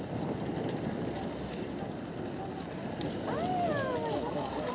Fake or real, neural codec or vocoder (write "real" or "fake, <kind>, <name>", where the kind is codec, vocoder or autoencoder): real